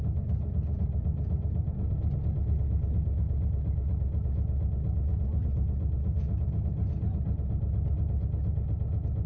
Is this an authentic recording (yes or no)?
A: yes